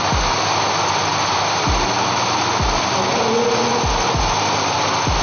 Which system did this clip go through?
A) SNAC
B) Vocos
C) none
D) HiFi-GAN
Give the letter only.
C